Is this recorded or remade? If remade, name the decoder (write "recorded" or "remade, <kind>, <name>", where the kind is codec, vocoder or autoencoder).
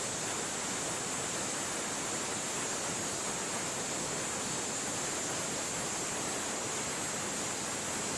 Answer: recorded